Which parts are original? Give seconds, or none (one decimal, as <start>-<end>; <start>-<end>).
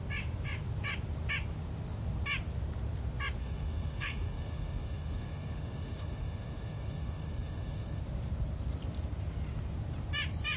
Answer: 0.0-3.4; 8.0-10.6